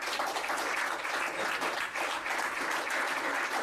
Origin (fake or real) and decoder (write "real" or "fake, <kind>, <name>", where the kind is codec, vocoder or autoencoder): real